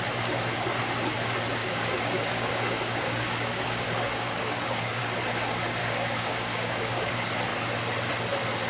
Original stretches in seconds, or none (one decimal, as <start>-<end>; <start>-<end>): 0.0-1.6; 5.0-5.8; 7.1-8.7